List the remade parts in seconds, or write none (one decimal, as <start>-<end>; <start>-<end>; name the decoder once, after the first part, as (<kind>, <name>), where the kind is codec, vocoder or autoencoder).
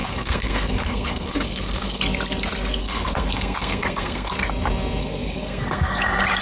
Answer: 0.0-2.0 (codec, SNAC); 2.8-4.3; 5.0-6.0